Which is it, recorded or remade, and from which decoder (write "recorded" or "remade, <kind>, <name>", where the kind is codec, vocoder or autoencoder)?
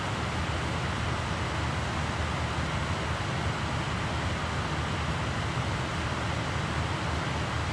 recorded